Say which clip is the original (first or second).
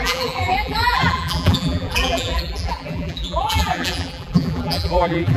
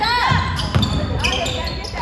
second